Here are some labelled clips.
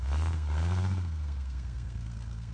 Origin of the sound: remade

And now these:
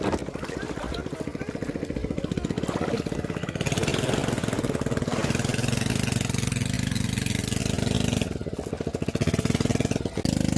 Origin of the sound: recorded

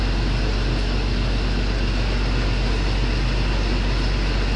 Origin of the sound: recorded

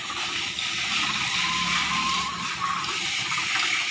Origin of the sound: recorded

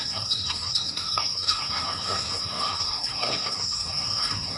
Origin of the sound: remade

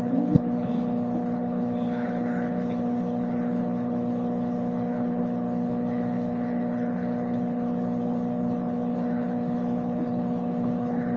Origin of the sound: remade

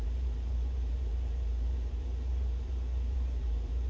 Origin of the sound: remade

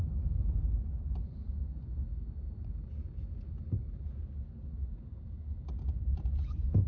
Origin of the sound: recorded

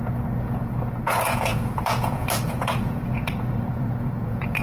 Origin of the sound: remade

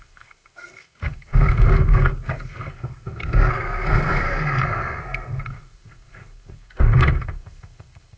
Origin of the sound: remade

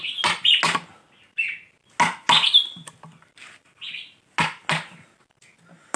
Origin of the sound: recorded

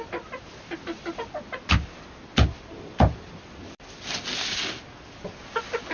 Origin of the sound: recorded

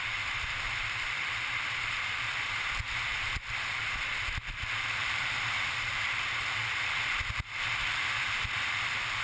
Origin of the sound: remade